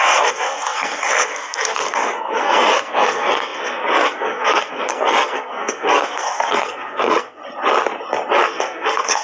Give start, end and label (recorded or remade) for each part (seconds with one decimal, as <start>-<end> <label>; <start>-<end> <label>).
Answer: 0.0-7.4 remade; 7.4-8.4 recorded; 8.4-9.2 remade